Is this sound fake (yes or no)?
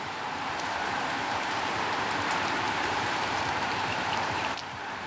yes